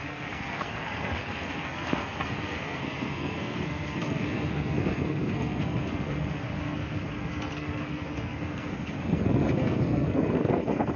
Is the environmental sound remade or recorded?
remade